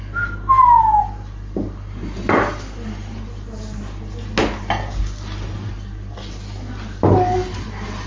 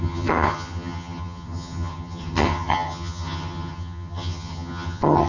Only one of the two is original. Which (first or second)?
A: first